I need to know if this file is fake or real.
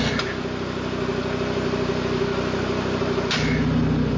real